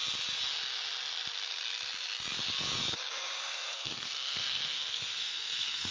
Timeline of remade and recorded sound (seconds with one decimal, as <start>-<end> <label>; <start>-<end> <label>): 0.0-3.5 recorded; 3.5-5.9 remade